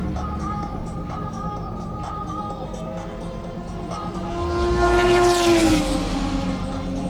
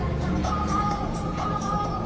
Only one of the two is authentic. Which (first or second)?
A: first